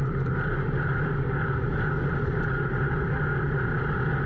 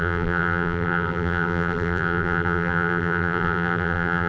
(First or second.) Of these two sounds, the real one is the first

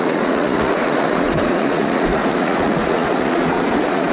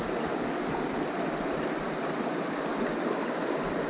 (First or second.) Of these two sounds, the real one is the second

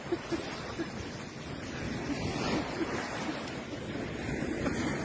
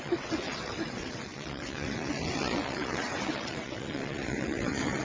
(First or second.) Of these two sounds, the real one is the first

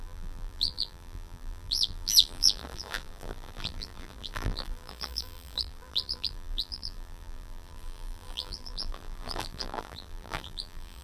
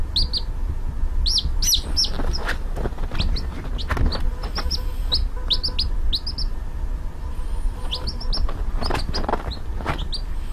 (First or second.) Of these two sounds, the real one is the second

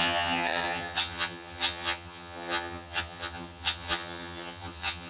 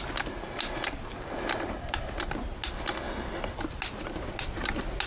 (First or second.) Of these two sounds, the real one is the second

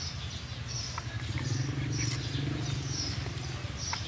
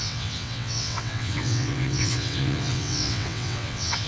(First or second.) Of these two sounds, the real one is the first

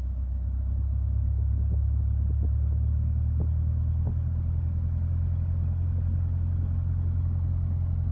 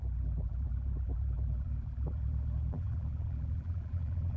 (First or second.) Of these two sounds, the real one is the first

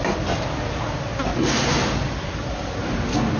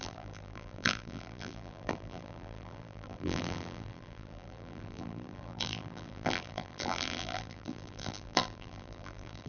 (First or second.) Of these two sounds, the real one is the first